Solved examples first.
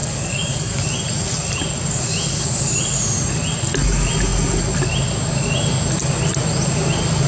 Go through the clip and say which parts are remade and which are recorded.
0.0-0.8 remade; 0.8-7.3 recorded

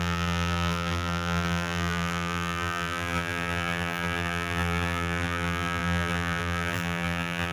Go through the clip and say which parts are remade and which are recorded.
0.0-7.5 remade

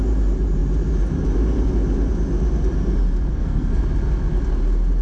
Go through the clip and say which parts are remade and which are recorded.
0.0-3.3 recorded; 3.3-3.8 remade; 3.8-5.0 recorded

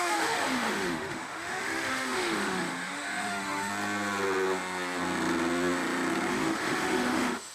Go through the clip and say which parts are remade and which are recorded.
0.0-3.7 remade; 3.7-6.3 recorded; 6.3-7.5 remade

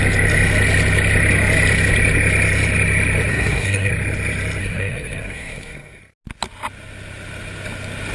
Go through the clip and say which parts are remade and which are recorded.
0.0-3.3 recorded; 3.3-3.9 remade; 3.9-4.6 recorded; 4.6-6.0 remade; 6.0-8.1 recorded

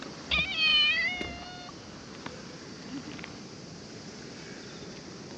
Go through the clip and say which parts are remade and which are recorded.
0.0-5.4 recorded

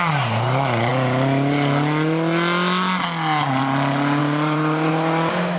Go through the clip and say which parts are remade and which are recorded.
0.0-4.2 recorded; 4.2-4.9 remade; 4.9-5.6 recorded

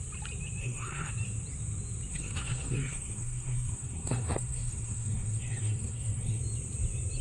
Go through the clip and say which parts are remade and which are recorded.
0.0-0.6 recorded; 0.6-1.1 remade; 1.1-2.1 recorded; 2.1-6.4 remade; 6.4-7.2 recorded